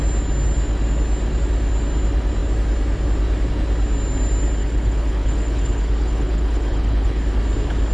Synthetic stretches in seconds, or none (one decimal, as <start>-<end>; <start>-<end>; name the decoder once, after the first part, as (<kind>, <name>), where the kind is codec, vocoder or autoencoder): 4.6-7.2 (codec, HILCodec)